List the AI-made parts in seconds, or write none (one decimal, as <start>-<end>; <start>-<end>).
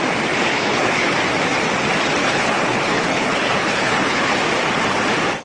0.5-1.1; 2.2-4.3